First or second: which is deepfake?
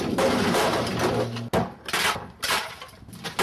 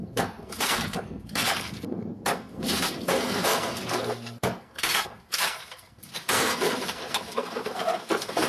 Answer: second